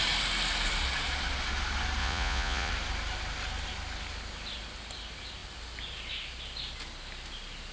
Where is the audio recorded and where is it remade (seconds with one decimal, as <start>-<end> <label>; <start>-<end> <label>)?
0.0-2.0 recorded; 2.0-2.7 remade; 2.7-7.7 recorded